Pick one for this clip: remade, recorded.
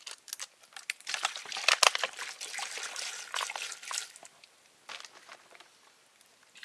recorded